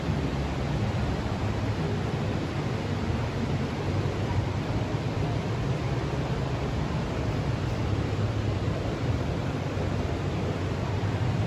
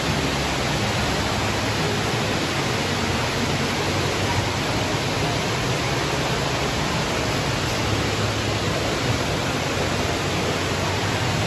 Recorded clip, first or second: second